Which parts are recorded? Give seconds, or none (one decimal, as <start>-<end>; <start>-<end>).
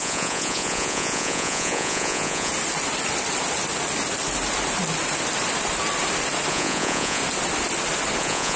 2.5-6.5; 7.2-8.2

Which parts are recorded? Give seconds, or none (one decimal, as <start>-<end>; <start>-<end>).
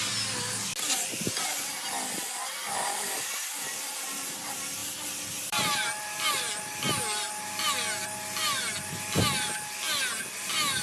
0.0-4.8; 6.5-10.8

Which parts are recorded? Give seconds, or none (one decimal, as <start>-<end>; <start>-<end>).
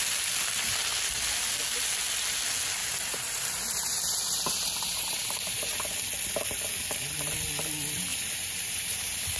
0.0-2.8; 5.8-8.1